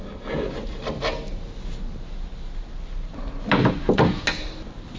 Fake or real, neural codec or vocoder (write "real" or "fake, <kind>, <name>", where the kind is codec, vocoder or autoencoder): real